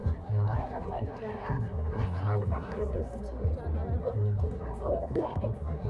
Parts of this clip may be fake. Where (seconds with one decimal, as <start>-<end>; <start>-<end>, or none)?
0.0-3.5; 4.0-5.9